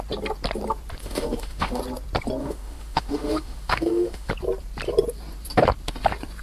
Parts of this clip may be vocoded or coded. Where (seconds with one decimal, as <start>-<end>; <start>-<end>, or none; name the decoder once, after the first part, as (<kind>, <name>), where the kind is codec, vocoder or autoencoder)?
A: 1.0-1.8 (autoencoder, DAC-VAE); 2.4-4.3